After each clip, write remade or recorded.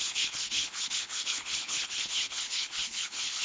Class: remade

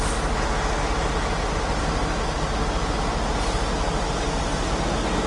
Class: recorded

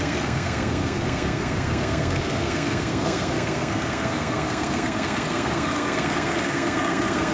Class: remade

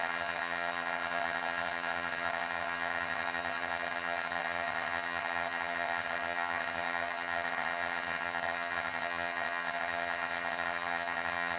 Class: remade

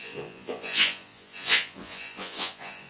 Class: remade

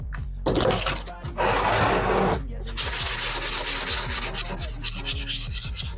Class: recorded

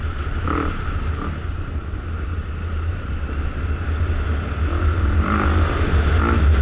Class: recorded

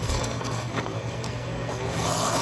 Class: remade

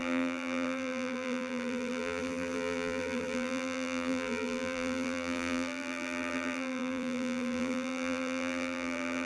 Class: remade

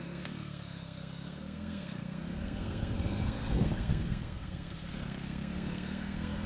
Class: remade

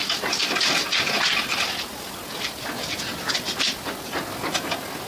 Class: recorded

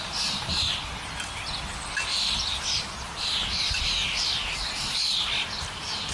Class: recorded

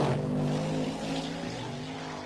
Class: recorded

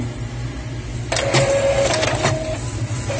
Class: recorded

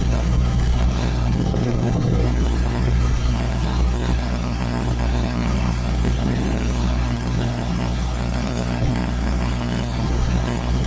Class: remade